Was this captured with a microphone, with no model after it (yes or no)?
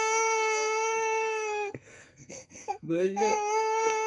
no